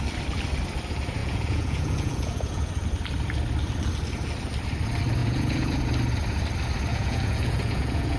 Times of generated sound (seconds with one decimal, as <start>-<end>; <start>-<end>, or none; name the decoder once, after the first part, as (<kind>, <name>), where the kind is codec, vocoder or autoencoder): 1.2-2.7 (vocoder, Vocos); 5.2-5.8; 6.9-8.2